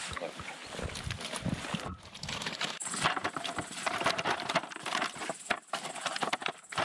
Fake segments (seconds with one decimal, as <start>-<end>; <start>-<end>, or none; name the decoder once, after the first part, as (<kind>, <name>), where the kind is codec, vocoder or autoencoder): 0.0-0.6 (vocoder, BigVGAN v2); 2.0-6.8